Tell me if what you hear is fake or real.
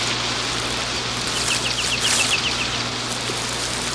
real